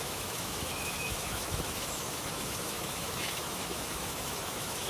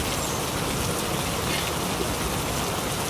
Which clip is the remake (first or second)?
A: first